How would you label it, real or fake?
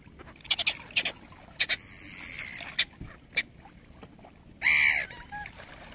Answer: real